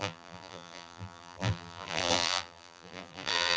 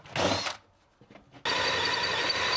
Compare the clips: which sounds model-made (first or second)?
first